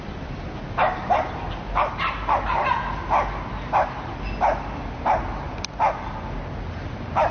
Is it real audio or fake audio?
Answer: real